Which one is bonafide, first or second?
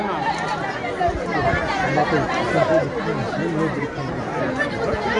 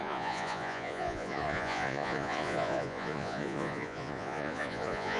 first